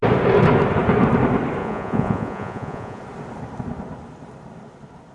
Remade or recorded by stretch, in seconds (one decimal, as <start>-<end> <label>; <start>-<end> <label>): 0.0-1.6 recorded; 1.6-3.0 remade; 3.0-5.1 recorded

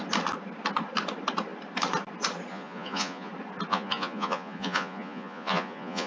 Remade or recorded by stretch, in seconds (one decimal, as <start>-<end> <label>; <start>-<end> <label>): 0.0-2.5 recorded; 2.5-3.3 remade; 3.3-3.7 recorded; 3.7-6.1 remade

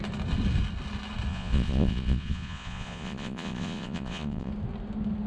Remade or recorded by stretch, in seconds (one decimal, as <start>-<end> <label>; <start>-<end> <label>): 0.0-1.3 recorded; 1.3-4.5 remade; 4.5-5.3 recorded

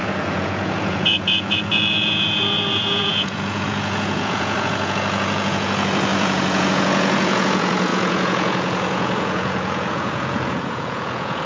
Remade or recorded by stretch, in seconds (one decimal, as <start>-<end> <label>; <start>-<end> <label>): 0.0-11.5 remade

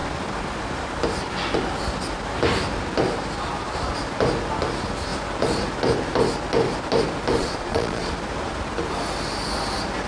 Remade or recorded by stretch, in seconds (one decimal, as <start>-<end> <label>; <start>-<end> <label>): 0.0-7.4 recorded; 7.4-8.1 remade; 8.1-10.1 recorded